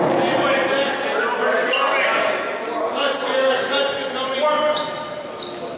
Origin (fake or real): real